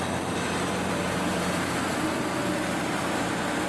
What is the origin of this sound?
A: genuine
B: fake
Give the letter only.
A